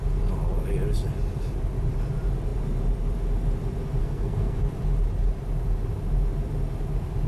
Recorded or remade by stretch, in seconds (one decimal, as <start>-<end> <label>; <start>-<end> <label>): 0.0-4.0 recorded; 4.0-4.6 remade; 4.6-7.3 recorded